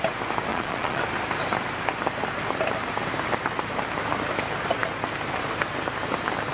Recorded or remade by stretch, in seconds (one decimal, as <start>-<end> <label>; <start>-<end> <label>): 0.0-0.5 recorded; 0.5-1.0 remade; 1.0-6.5 recorded